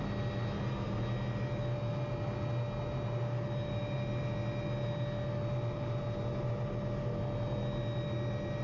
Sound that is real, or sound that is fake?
real